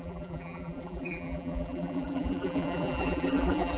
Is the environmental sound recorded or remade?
remade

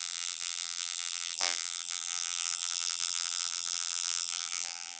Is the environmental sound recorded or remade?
remade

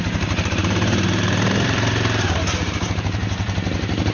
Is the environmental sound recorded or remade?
remade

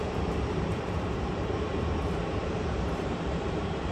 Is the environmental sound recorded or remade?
remade